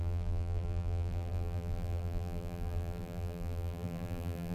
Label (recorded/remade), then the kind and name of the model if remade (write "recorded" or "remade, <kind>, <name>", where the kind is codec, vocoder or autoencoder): remade, vocoder, BigVGAN v2